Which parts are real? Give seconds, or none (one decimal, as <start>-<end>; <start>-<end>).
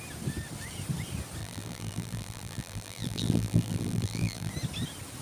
0.0-1.4; 4.5-5.2